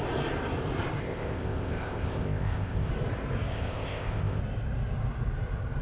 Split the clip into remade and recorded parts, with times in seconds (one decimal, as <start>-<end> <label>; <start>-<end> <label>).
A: 0.0-1.0 recorded; 1.0-2.9 remade; 2.9-3.5 recorded; 3.5-4.4 remade; 4.4-5.8 recorded